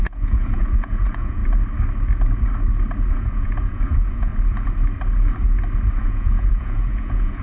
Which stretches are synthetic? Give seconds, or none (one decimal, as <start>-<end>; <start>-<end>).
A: 0.0-1.4; 3.1-4.3; 6.0-7.4